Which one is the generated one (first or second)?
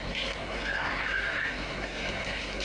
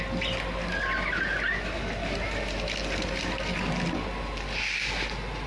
first